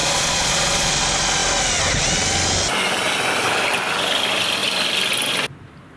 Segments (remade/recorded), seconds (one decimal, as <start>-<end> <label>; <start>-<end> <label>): 0.0-0.9 remade; 0.9-6.0 recorded